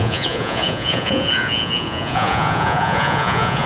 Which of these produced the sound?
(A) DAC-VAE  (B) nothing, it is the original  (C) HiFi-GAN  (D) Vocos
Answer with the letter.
D